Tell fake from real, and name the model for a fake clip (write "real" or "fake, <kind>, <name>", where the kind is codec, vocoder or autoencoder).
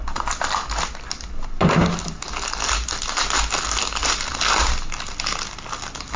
real